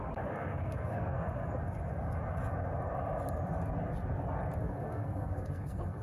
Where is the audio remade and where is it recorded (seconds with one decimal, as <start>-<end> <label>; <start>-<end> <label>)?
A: 0.0-1.4 remade; 1.4-4.6 recorded; 4.6-6.0 remade